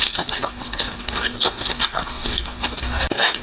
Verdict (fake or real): fake